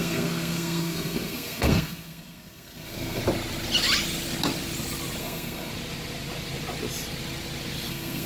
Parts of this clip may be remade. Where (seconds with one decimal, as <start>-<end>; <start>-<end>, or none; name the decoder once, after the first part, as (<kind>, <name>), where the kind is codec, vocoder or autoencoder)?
0.0-3.2 (codec, SNAC); 5.2-5.7; 7.9-8.3